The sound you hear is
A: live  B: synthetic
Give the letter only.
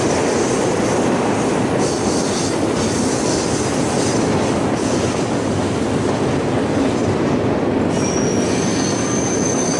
A